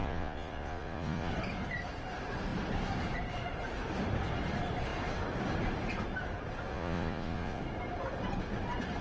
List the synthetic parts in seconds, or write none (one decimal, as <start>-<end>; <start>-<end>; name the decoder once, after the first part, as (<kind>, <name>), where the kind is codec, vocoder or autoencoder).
0.0-1.3 (vocoder, Vocos); 6.7-7.6